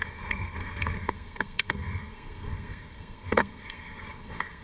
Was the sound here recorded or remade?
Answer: remade